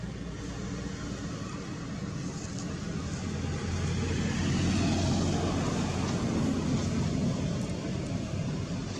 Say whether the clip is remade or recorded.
recorded